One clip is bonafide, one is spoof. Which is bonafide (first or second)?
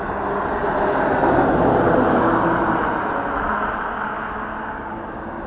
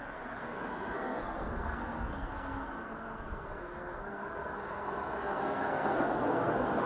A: first